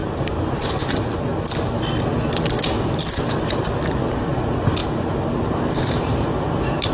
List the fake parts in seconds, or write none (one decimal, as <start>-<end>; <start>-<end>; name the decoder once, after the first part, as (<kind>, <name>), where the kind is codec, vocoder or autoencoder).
0.0-1.3 (vocoder, BigVGAN v2); 3.4-4.8; 5.5-6.9